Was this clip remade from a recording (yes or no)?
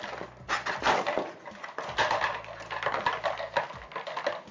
no